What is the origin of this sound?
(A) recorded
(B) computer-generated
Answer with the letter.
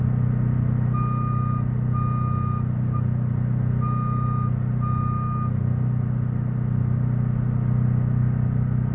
A